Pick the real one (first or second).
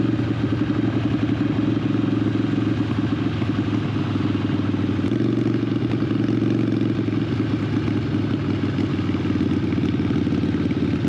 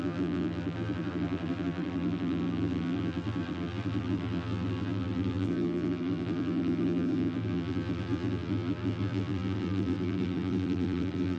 first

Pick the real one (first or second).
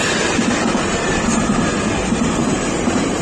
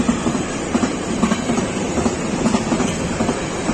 first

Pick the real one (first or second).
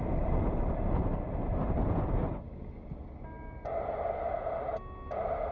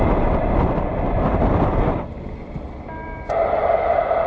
first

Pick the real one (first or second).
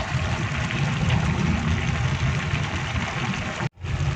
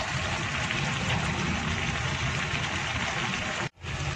first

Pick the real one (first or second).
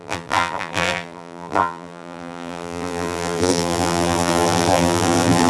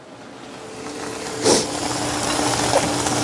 second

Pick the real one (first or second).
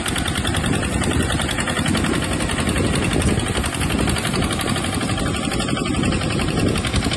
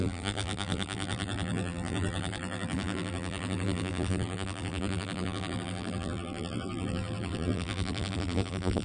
first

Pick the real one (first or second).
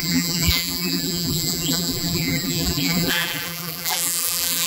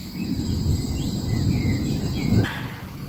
second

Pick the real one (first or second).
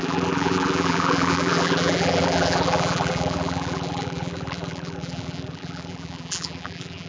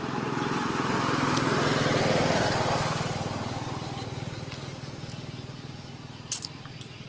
second